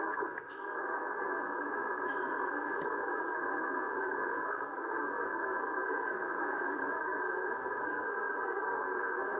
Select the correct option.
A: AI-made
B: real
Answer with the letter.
A